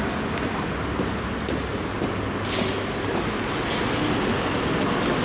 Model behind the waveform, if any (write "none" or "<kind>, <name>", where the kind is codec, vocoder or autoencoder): none